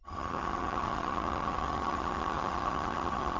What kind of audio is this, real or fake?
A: fake